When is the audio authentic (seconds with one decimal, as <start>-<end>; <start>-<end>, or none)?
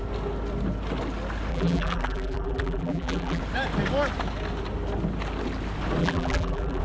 0.0-1.5; 3.4-6.0